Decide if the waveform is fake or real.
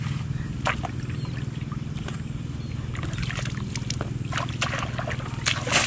real